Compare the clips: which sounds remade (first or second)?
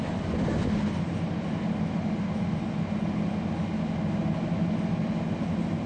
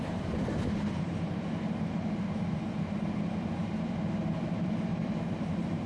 second